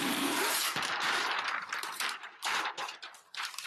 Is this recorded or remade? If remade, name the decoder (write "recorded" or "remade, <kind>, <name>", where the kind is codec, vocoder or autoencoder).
remade, vocoder, BigVGAN v2